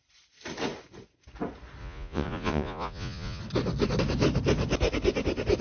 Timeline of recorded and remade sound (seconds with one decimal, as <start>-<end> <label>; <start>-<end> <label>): 0.0-1.8 recorded; 1.8-3.4 remade; 3.4-5.6 recorded